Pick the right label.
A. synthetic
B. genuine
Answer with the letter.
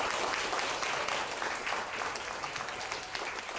B